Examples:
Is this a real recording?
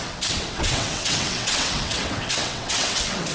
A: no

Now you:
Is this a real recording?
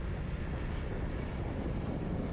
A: yes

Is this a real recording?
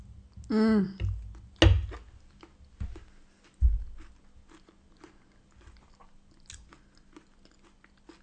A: yes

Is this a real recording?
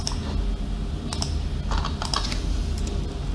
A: yes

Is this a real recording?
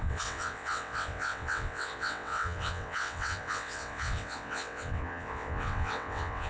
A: no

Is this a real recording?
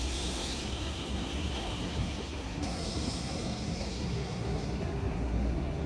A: no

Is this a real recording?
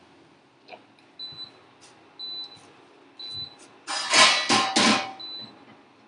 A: yes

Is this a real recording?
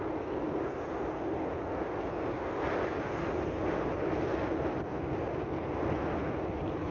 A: yes